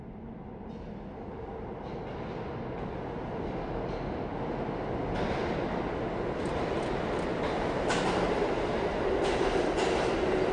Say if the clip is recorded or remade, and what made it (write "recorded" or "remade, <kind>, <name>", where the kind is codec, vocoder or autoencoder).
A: recorded